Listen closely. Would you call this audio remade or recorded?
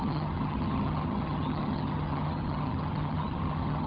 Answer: remade